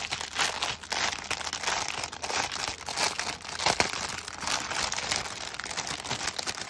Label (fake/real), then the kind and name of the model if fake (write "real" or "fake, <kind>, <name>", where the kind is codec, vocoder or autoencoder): real